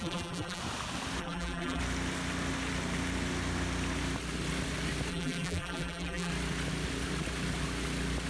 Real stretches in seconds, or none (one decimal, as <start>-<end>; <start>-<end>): 0.6-1.2; 1.8-5.1; 6.3-8.3